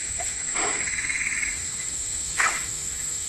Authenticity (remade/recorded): remade